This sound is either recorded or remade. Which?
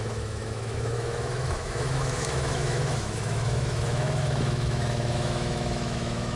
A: remade